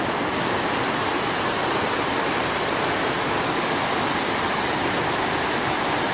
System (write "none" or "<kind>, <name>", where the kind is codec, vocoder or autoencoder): none